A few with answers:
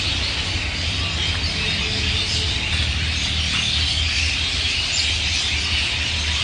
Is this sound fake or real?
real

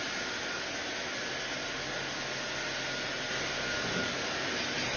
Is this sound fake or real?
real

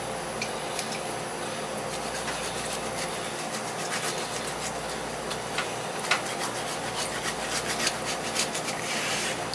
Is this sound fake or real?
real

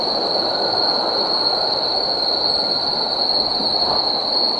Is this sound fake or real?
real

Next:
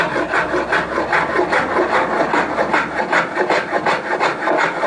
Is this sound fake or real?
real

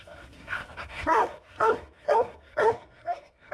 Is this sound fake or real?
fake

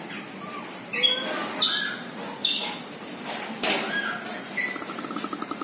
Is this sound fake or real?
real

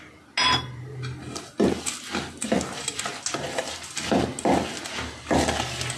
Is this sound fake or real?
real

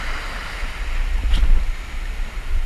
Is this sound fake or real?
real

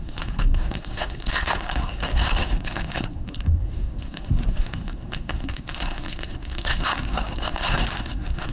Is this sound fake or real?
fake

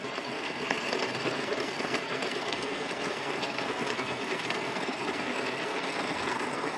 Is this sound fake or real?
fake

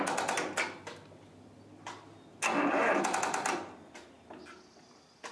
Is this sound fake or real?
real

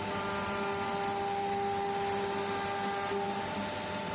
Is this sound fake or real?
real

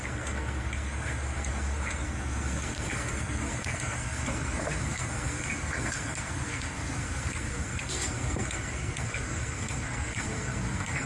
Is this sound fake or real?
fake